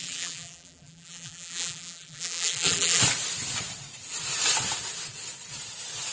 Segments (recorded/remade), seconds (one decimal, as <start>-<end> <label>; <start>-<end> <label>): 0.0-3.0 remade; 3.0-6.1 recorded